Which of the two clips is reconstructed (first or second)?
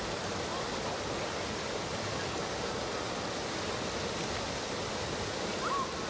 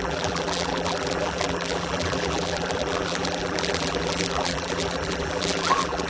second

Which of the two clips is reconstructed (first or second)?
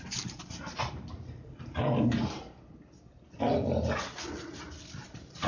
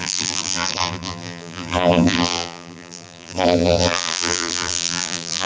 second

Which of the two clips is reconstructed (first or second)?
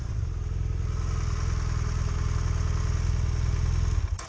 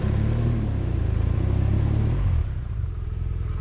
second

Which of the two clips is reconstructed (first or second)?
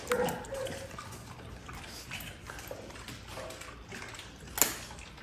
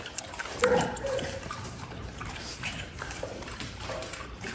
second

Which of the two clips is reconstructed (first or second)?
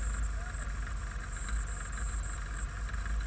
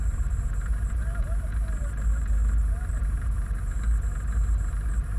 second